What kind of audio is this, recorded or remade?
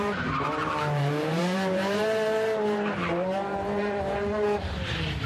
remade